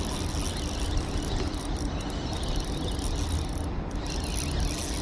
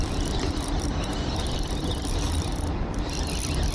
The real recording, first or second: first